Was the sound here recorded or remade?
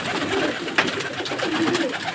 remade